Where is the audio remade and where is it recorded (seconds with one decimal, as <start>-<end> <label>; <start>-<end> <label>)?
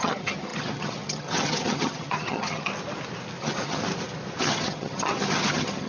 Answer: 0.0-2.7 remade; 2.7-3.4 recorded; 3.4-3.8 remade; 3.8-4.4 recorded; 4.4-5.9 remade